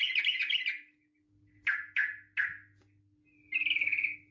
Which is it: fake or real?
real